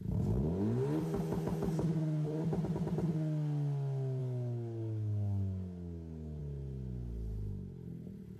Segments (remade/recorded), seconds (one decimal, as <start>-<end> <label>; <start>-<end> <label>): 0.0-4.2 recorded; 4.2-6.4 remade; 6.4-8.4 recorded